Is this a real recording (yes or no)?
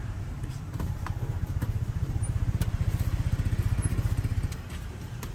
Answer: no